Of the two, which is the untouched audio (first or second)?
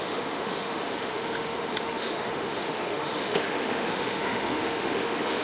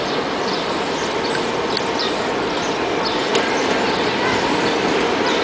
second